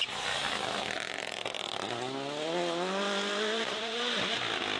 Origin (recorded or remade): recorded